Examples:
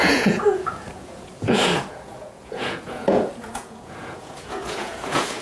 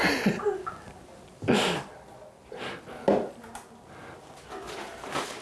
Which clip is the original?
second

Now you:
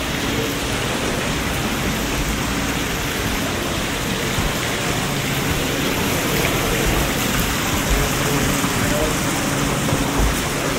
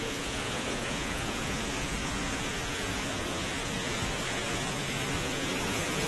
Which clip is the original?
first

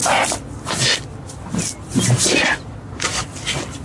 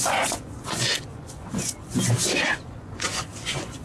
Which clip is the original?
first